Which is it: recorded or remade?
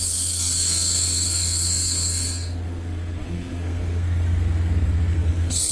remade